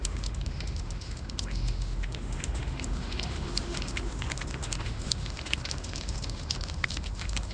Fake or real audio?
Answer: fake